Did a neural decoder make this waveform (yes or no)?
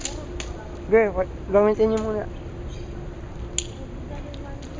no